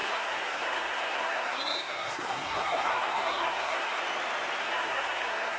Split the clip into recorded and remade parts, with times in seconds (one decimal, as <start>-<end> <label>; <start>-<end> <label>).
0.0-4.0 remade; 4.0-4.6 recorded; 4.6-5.6 remade